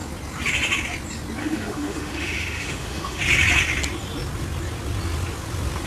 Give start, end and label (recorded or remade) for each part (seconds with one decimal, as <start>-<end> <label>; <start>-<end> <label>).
0.0-1.4 recorded; 1.4-3.2 remade; 3.2-5.9 recorded